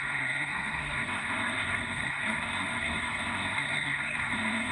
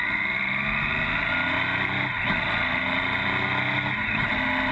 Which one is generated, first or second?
first